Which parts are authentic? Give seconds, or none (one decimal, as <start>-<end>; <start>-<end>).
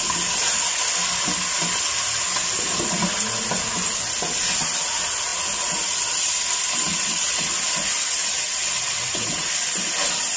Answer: 0.0-6.9; 7.5-8.2; 9.5-10.4